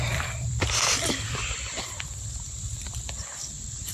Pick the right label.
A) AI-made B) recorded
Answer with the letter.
A